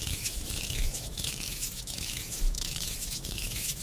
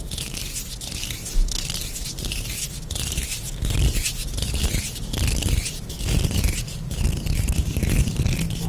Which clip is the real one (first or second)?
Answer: second